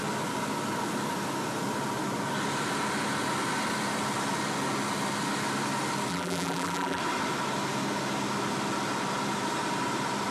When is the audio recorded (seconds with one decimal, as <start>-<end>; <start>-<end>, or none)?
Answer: 0.0-6.1; 7.0-10.3